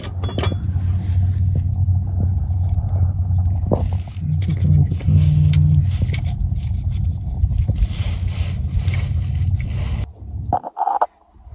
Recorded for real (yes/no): yes